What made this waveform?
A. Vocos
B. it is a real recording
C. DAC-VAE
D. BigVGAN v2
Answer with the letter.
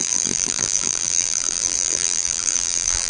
D